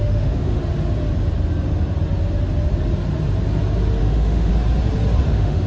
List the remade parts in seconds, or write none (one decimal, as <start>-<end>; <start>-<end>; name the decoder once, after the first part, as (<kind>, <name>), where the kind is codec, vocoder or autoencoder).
0.0-0.6 (autoencoder, DAC-VAE); 4.0-4.5; 5.3-5.7